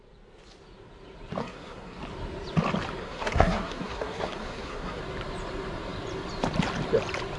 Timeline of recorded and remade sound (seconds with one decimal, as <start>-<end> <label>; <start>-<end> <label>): 0.0-1.4 recorded; 1.4-2.0 remade; 2.0-3.0 recorded; 3.0-5.0 remade; 5.0-7.4 recorded